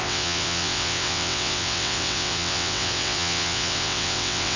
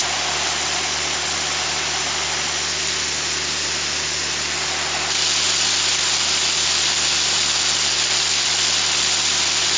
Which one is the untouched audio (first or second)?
second